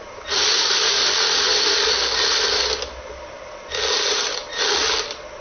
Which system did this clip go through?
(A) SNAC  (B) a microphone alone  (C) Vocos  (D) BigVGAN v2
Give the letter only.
D